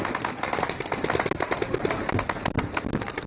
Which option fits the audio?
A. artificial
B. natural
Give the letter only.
B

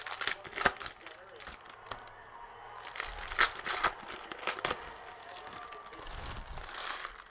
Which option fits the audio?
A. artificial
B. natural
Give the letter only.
B